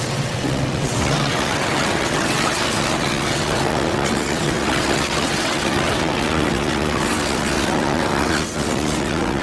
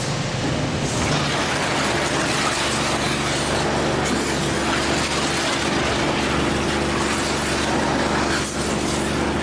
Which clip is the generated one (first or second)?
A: first